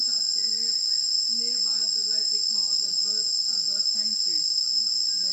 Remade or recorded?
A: recorded